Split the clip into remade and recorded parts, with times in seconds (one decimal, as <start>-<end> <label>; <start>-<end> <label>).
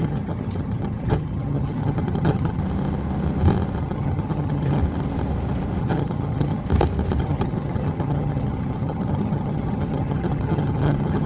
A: 0.0-2.6 remade; 2.6-3.8 recorded; 3.8-4.8 remade; 4.8-5.8 recorded; 5.8-6.6 remade; 6.6-7.2 recorded; 7.2-11.3 remade